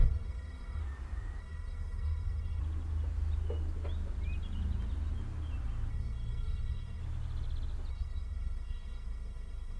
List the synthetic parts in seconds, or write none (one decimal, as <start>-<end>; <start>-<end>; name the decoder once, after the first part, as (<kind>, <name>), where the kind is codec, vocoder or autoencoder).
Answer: 0.0-0.8 (codec, SNAC); 1.4-2.6; 5.9-7.0; 7.9-9.8